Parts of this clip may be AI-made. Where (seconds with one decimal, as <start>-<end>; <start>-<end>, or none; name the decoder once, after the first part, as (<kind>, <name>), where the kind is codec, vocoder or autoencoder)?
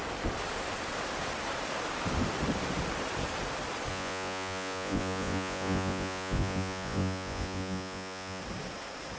3.9-8.4 (vocoder, Vocos)